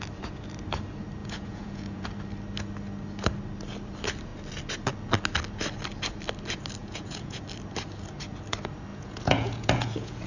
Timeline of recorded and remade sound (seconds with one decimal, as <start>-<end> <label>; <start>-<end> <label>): 0.0-1.2 recorded; 1.2-2.1 remade; 2.1-6.8 recorded; 6.8-7.4 remade; 7.4-8.9 recorded; 8.9-10.3 remade